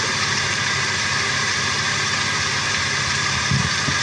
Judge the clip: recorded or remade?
remade